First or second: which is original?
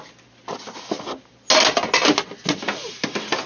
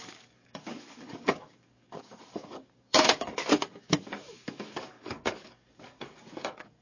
first